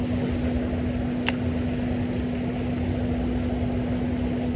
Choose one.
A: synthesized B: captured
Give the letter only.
B